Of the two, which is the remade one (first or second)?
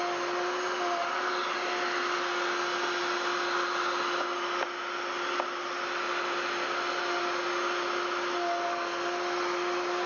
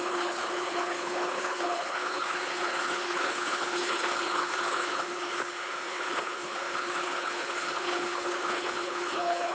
second